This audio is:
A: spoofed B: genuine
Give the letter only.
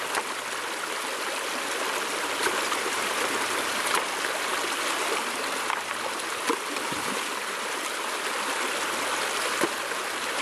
B